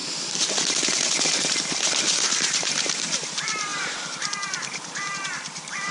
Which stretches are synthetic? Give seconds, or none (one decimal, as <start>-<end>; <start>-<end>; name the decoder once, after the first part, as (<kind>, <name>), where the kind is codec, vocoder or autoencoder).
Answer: 0.0-5.9 (vocoder, BigVGAN v2)